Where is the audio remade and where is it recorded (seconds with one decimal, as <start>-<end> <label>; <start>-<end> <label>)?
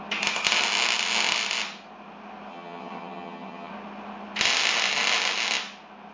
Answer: 0.0-2.5 recorded; 2.5-3.7 remade; 3.7-6.1 recorded